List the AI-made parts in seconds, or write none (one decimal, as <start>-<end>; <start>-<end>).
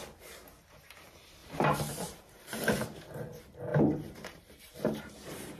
1.4-3.0; 3.7-5.6